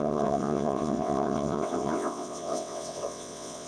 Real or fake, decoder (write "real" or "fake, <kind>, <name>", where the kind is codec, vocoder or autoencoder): fake, vocoder, WaveNeXt